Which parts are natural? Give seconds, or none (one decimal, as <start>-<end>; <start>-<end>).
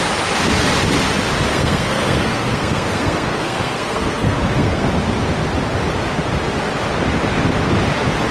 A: 0.0-1.5; 4.9-8.3